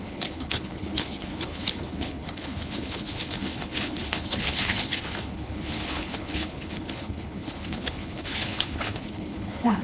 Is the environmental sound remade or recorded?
remade